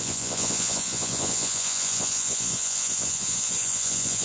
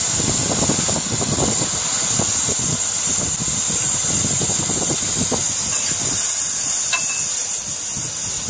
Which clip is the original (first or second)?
second